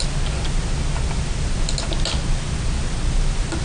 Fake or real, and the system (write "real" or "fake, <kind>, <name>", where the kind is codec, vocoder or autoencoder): real